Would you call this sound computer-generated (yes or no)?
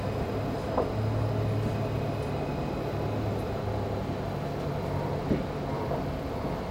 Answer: no